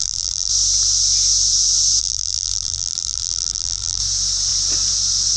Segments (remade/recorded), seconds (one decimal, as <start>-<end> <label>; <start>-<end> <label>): 0.0-0.5 remade; 0.5-2.0 recorded; 2.0-4.0 remade; 4.0-5.4 recorded